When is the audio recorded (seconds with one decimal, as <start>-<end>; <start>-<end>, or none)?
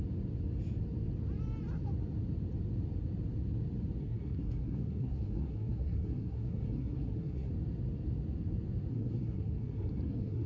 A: 0.0-4.0; 7.5-8.9